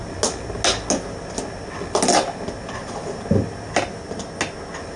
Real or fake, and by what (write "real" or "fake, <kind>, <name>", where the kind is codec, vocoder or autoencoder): real